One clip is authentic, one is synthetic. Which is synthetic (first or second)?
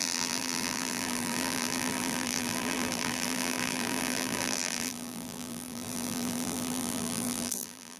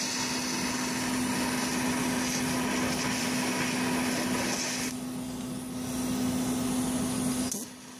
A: first